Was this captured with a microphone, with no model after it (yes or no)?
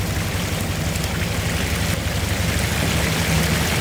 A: yes